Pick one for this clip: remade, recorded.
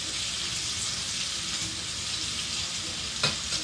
recorded